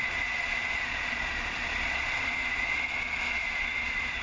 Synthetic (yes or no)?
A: yes